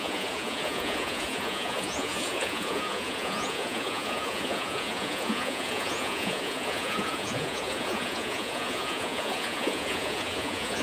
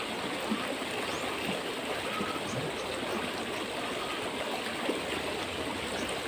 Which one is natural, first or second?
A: second